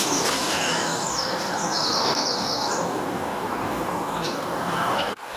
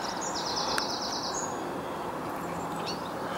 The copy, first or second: first